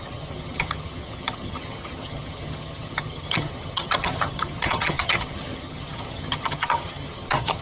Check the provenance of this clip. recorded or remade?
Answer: remade